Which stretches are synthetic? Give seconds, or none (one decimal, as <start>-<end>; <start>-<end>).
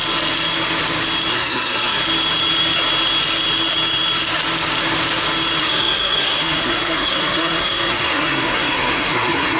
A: 1.3-2.0; 5.6-9.6